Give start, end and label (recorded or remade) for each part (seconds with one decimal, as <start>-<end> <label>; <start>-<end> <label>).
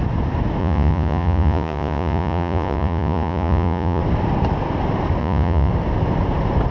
0.0-0.6 recorded; 0.6-4.0 remade; 4.0-5.2 recorded; 5.2-5.7 remade; 5.7-6.7 recorded